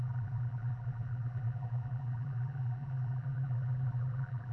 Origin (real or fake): fake